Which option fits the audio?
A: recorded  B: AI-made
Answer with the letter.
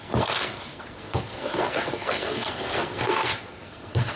B